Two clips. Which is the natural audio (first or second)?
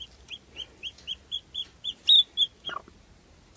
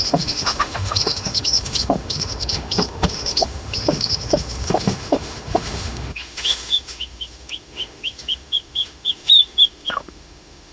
first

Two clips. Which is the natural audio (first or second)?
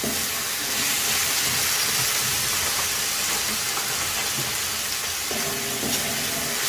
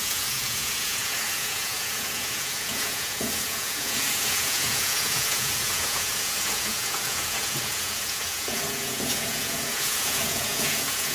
first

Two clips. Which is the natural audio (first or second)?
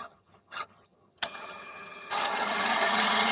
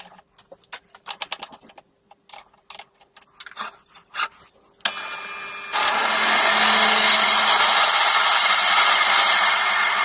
second